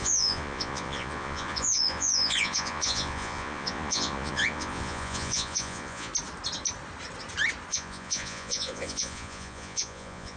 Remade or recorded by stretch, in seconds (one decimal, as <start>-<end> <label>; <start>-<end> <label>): 0.0-6.1 remade; 6.1-7.7 recorded; 7.7-10.4 remade